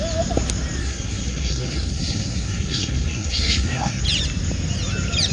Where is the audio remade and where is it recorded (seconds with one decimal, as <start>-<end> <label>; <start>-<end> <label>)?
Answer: 0.0-0.8 recorded; 0.8-4.0 remade; 4.0-5.3 recorded